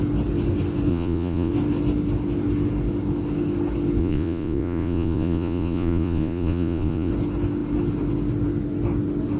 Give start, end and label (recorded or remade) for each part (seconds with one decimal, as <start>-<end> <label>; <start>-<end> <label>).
0.0-0.9 recorded; 0.9-1.5 remade; 1.5-4.0 recorded; 4.0-7.1 remade; 7.1-9.4 recorded